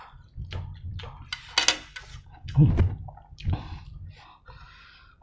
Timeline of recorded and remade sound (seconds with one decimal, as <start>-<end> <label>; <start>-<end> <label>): 0.0-2.1 recorded; 2.1-2.7 remade; 2.7-5.2 recorded